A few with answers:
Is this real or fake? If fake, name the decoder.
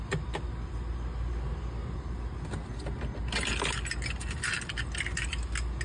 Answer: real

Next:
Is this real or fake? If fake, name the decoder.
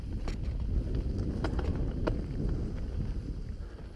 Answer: real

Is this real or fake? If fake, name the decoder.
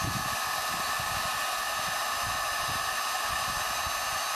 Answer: real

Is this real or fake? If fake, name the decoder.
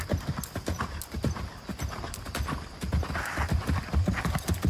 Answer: real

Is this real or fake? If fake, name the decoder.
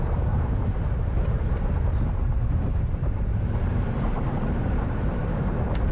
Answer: fake, vocoder, BigVGAN v2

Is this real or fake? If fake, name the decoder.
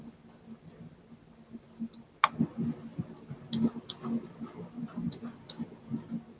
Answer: fake, vocoder, BigVGAN v2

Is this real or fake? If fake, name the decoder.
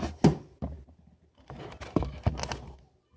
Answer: real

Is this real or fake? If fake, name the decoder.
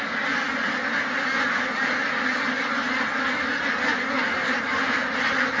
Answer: real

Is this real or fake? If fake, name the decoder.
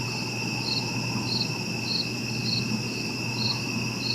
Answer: real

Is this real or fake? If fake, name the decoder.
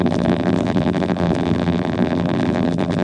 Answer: fake, vocoder, BigVGAN v2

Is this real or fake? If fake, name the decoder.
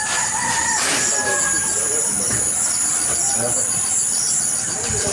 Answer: fake, vocoder, BigVGAN v2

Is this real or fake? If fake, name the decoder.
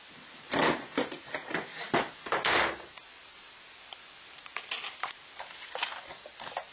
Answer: real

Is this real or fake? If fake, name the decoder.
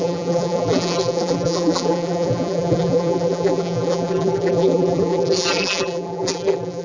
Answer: fake, vocoder, BigVGAN v2